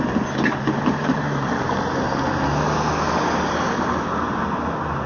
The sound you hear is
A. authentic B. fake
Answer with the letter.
A